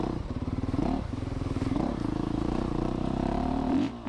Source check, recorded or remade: remade